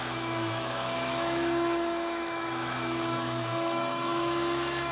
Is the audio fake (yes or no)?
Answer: yes